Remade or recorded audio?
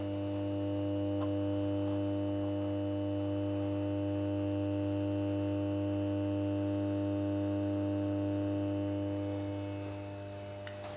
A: recorded